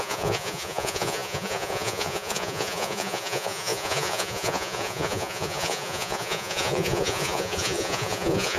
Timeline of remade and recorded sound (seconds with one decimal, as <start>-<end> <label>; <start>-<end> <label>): 0.0-8.6 remade